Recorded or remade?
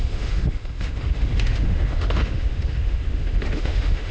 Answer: remade